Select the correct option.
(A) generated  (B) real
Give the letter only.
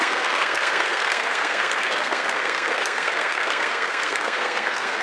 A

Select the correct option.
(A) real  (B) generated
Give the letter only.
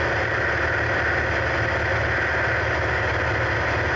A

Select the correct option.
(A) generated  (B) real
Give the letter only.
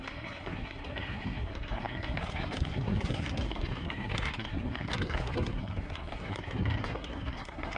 A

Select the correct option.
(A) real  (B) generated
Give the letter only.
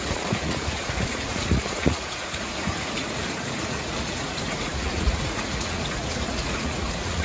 B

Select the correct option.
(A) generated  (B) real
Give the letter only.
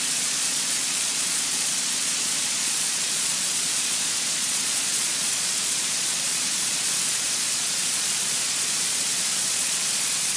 A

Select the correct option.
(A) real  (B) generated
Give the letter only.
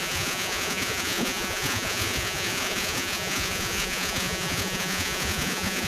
B